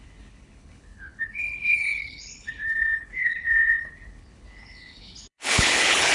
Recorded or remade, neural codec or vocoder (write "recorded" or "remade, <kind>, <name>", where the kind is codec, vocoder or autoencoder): remade, codec, HILCodec